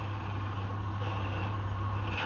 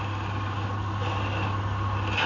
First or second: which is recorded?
second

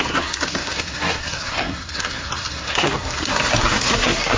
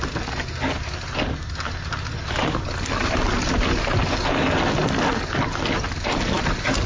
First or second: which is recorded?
second